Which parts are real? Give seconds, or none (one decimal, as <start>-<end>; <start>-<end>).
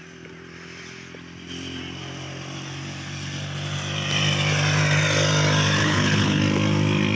0.0-5.8; 6.4-7.1